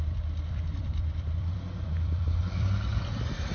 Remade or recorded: remade